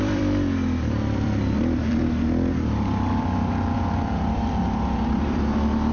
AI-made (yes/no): yes